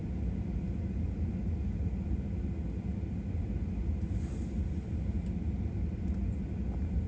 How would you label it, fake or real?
real